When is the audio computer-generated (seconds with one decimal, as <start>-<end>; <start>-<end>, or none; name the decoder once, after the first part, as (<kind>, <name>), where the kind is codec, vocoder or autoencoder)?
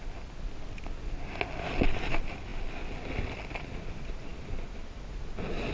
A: none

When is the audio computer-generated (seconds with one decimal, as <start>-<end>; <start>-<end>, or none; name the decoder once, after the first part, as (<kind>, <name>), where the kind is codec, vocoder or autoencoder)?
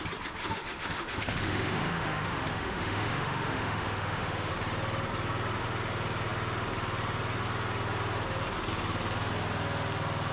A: 0.4-4.5 (autoencoder, DAC-VAE)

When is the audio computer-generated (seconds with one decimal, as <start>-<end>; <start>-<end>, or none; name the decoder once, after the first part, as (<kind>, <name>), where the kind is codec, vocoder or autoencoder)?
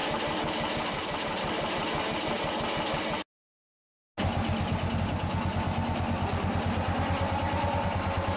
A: none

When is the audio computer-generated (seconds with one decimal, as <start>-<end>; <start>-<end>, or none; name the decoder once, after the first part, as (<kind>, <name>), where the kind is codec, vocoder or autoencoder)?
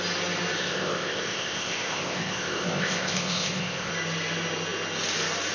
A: 0.6-3.9 (codec, ZipCodec)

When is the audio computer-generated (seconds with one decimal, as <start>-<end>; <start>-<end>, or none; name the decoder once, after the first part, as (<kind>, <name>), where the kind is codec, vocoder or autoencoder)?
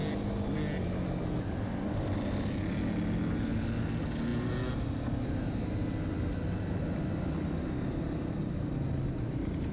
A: none